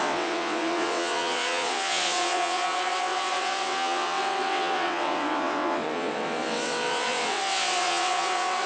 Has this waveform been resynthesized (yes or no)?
yes